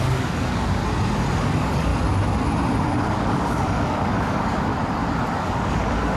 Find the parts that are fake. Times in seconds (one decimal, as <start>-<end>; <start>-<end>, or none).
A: 0.0-0.8; 1.4-1.9; 3.0-4.7; 5.3-6.2